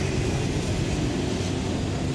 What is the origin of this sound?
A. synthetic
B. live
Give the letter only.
B